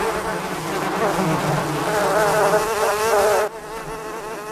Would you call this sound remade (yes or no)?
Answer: no